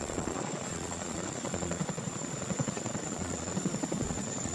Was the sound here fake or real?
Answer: fake